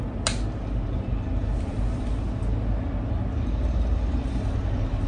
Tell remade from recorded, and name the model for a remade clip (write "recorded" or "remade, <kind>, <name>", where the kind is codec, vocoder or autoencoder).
recorded